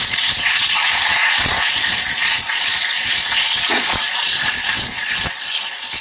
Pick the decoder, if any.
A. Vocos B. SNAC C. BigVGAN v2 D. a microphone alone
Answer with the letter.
A